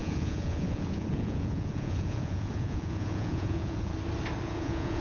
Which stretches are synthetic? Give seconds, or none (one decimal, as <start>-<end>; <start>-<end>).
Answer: 0.0-3.9; 4.4-5.0